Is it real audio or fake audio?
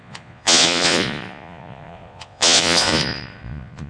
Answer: fake